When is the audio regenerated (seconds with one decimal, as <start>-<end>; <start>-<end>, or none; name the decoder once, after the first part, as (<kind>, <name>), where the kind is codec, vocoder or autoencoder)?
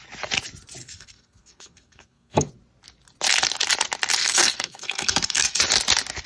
0.8-2.5 (codec, SNAC); 4.2-5.6